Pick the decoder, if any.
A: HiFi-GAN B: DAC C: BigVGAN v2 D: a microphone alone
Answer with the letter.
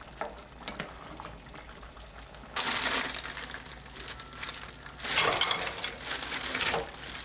D